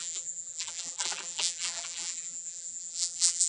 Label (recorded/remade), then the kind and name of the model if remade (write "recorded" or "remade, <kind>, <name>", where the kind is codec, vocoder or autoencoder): remade, vocoder, BigVGAN v2